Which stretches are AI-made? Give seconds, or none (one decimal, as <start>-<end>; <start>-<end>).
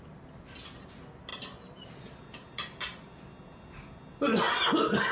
none